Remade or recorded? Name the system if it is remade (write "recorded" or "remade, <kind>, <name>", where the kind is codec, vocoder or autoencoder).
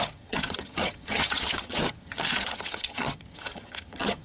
remade, vocoder, HiFi-GAN